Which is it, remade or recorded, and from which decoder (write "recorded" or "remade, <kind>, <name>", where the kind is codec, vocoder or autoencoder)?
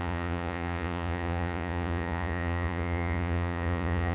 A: remade, vocoder, Vocos